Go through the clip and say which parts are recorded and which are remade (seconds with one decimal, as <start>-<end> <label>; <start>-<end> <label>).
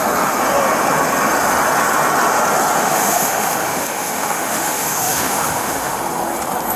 0.0-2.8 recorded; 2.8-6.0 remade; 6.0-6.8 recorded